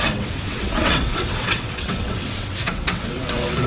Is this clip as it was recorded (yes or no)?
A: no